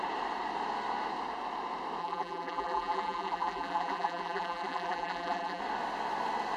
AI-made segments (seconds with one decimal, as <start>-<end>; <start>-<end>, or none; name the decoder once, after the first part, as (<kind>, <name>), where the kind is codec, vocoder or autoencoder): 2.0-5.6 (vocoder, BigVGAN v2)

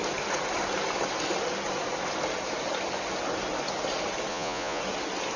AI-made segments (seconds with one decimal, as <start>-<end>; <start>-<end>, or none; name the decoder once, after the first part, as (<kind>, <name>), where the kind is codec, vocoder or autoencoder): 4.3-4.8 (vocoder, Vocos)

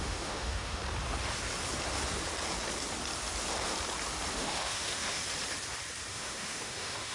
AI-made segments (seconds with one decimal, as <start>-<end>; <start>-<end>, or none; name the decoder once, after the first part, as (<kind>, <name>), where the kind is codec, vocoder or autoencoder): 0.0-0.8 (autoencoder, DAC-VAE); 4.3-5.2; 6.1-7.1

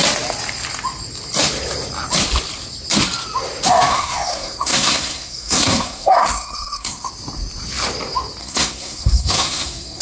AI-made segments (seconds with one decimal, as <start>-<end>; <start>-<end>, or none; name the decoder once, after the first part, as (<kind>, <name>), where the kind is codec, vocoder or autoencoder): 3.9-7.1 (codec, SNAC); 8.4-10.0

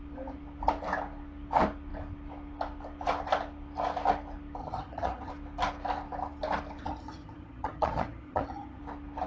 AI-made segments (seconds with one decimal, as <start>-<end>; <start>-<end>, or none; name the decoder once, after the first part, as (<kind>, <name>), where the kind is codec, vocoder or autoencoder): 4.6-5.3 (vocoder, HiFi-GAN); 6.8-8.8

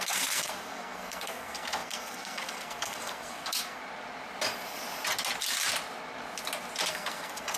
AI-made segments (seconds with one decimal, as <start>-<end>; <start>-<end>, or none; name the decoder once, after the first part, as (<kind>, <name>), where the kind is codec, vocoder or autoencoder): 0.0-3.8 (codec, SNAC); 6.9-7.6

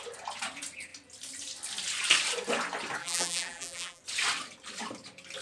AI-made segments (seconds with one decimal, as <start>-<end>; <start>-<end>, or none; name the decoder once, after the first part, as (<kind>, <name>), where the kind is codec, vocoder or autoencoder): 3.0-4.0 (vocoder, BigVGAN v2)

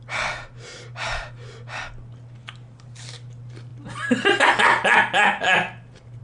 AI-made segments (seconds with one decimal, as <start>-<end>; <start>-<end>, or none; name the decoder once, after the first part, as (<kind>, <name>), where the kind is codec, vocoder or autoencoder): none